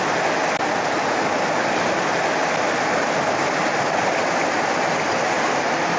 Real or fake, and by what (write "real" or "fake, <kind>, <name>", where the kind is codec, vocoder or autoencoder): real